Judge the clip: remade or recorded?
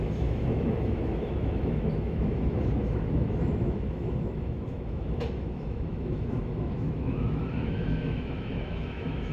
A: remade